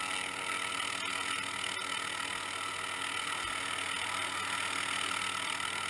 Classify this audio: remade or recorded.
recorded